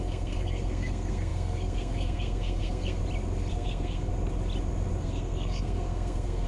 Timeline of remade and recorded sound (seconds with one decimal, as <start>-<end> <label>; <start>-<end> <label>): 0.0-3.0 remade; 3.0-3.5 recorded; 3.5-4.1 remade; 4.1-5.0 recorded; 5.0-6.5 remade